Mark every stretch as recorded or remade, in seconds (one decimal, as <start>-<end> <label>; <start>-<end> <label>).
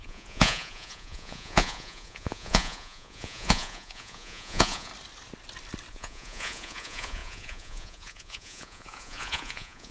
0.0-4.9 remade; 4.9-5.9 recorded; 5.9-9.9 remade